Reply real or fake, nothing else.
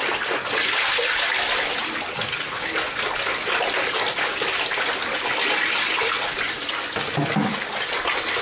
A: real